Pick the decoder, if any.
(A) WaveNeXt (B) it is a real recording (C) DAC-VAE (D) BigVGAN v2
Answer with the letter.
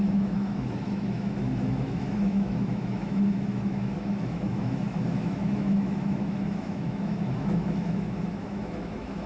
C